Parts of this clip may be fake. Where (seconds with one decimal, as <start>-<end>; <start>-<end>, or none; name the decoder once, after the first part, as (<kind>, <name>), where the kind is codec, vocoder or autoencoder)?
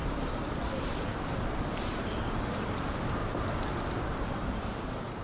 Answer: 0.0-3.2 (vocoder, BigVGAN v2); 4.2-5.2